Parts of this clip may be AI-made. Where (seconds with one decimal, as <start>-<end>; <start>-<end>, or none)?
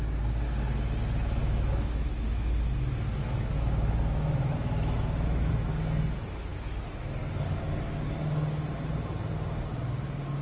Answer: 1.4-5.5